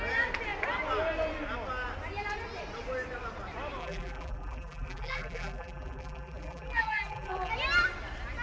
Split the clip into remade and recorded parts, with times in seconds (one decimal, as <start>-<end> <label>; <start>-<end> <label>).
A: 0.0-3.8 recorded; 3.8-7.5 remade; 7.5-8.4 recorded